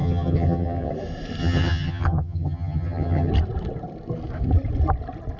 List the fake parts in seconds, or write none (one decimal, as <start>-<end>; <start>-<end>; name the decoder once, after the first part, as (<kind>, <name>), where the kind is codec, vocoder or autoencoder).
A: 0.0-0.9 (vocoder, HiFi-GAN); 1.4-3.3

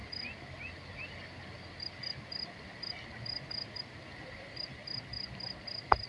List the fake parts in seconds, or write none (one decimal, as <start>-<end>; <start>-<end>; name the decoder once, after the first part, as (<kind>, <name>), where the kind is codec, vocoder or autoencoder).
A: none

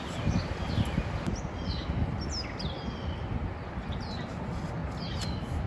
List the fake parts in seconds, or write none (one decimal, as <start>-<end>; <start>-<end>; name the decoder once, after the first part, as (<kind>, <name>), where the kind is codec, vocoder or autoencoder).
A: none

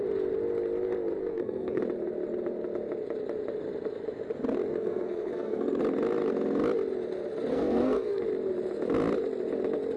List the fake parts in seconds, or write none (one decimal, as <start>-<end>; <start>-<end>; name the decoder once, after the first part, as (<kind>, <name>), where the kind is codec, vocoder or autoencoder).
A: 1.2-1.8 (codec, SNAC); 4.7-5.8; 7.5-8.2

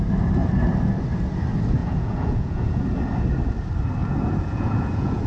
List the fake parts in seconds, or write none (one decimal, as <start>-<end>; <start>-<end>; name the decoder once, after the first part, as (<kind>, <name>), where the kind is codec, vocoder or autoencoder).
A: 1.8-2.8 (vocoder, Vocos); 4.0-5.3

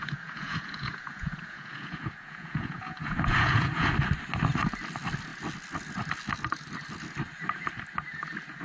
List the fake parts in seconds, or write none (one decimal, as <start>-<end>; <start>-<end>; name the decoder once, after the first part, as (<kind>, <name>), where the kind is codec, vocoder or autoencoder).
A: 0.0-3.9 (vocoder, Vocos)

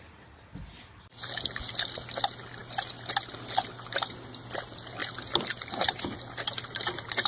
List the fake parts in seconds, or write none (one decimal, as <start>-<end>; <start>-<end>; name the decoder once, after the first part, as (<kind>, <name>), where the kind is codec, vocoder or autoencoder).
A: none

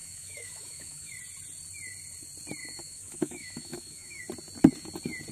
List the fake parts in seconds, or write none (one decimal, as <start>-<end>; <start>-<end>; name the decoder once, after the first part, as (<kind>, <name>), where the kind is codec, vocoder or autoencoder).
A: 0.0-1.1 (autoencoder, DAC-VAE); 2.6-4.2